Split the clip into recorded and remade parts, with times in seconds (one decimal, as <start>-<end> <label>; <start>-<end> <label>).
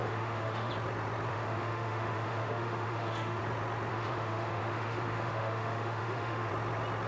0.0-0.7 remade; 0.7-1.3 recorded; 1.3-3.4 remade; 3.4-3.9 recorded; 3.9-6.5 remade; 6.5-7.1 recorded